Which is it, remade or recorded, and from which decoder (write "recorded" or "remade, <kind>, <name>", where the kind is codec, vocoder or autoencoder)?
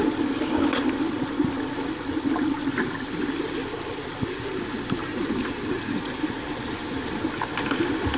recorded